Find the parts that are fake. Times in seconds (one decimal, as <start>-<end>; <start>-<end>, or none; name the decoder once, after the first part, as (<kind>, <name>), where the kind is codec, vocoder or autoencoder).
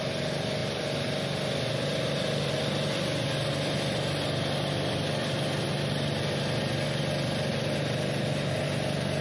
none